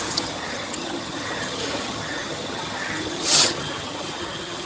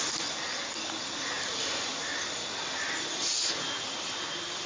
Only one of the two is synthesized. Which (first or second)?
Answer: first